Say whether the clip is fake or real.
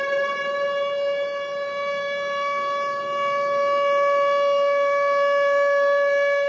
real